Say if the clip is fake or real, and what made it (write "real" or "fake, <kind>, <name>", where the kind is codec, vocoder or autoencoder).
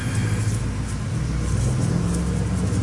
real